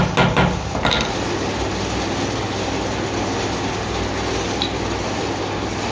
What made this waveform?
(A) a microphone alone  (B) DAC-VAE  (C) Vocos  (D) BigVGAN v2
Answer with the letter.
A